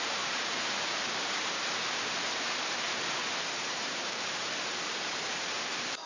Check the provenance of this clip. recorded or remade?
remade